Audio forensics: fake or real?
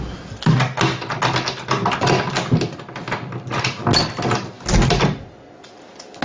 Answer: real